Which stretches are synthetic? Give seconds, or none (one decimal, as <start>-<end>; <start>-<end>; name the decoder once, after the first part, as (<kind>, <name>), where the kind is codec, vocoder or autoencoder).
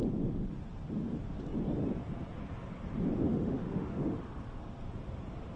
3.3-4.2 (autoencoder, DAC-VAE)